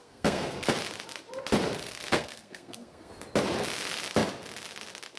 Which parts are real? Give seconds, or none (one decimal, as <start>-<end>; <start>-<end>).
0.7-1.8; 3.1-5.2